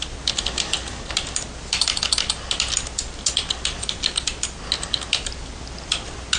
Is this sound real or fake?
real